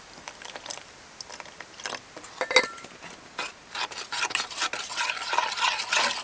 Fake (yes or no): no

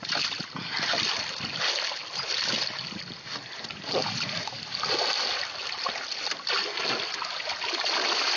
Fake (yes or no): no